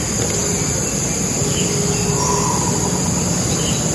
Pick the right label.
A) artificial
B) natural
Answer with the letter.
B